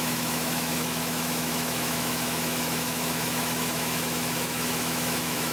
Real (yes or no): no